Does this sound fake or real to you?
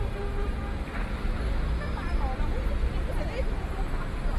fake